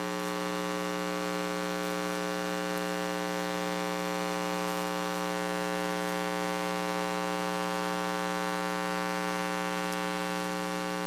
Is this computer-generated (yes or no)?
no